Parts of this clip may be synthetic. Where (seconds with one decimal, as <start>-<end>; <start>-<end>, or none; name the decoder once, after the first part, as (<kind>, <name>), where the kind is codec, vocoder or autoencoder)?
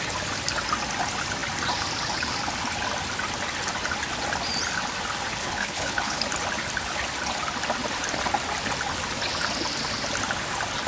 5.4-6.2 (codec, HILCodec)